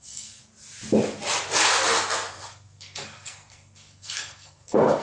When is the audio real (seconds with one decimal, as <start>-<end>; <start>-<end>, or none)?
0.4-2.3